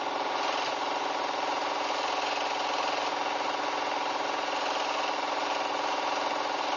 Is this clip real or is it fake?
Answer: real